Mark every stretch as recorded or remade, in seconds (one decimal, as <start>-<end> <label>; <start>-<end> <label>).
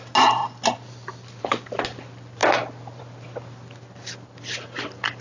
0.0-5.2 recorded